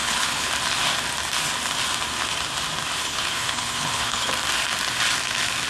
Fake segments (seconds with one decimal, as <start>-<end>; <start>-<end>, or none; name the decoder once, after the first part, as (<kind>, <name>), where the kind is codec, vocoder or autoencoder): 0.0-0.5 (codec, HILCodec); 3.0-4.3